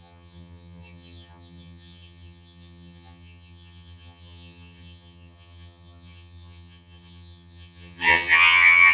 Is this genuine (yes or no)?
no